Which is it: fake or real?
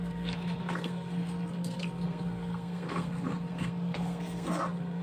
fake